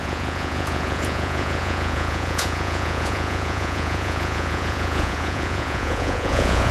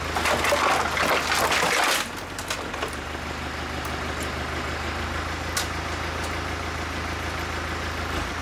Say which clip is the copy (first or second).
first